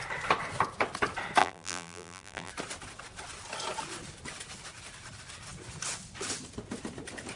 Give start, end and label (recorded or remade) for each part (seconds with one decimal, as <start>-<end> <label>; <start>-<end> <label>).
0.0-1.4 recorded; 1.4-2.5 remade; 2.5-7.4 recorded